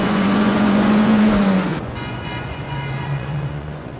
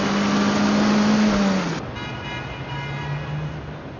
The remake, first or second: first